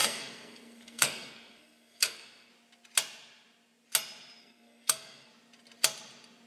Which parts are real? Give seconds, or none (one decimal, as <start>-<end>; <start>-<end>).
2.5-4.4; 5.3-6.5